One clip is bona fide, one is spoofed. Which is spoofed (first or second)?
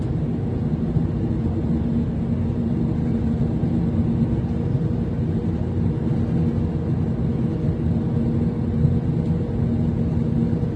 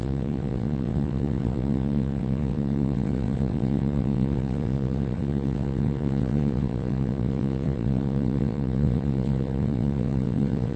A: second